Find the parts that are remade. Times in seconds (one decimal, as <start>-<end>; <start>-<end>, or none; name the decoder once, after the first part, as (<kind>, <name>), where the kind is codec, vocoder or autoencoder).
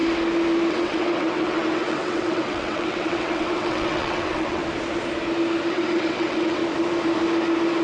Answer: 0.7-4.6 (vocoder, WaveNeXt); 5.7-6.6